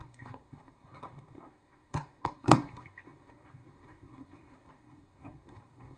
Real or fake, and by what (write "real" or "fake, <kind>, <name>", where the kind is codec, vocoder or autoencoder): fake, codec, SNAC